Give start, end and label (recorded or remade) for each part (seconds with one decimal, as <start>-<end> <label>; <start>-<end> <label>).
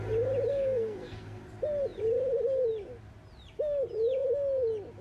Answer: 0.0-0.5 recorded; 0.5-1.4 remade; 1.4-5.0 recorded